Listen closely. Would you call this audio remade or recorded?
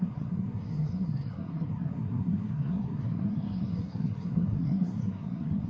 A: remade